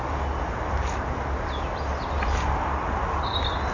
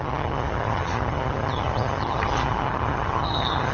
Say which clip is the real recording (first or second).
first